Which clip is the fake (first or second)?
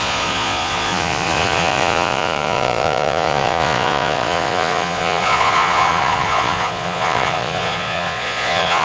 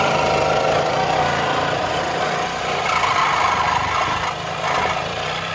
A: first